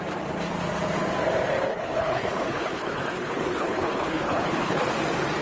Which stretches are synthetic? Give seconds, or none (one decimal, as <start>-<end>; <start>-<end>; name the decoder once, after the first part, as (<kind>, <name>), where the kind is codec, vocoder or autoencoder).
1.7-4.9 (codec, HILCodec)